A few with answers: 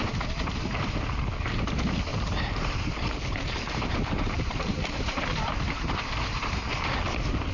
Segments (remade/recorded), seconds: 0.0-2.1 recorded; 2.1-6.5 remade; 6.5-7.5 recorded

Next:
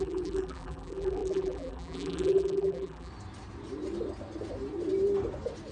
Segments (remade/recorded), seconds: 0.0-3.1 remade; 3.1-5.7 recorded

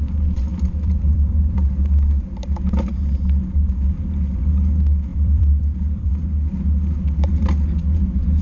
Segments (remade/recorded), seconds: 0.0-0.5 recorded; 0.5-1.7 remade; 1.7-5.1 recorded; 5.1-6.1 remade; 6.1-8.4 recorded

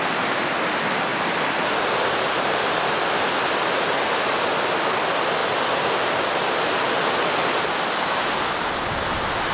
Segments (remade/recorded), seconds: 0.0-9.5 recorded